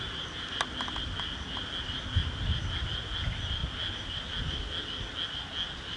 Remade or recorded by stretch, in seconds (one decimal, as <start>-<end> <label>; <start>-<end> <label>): 0.0-6.0 recorded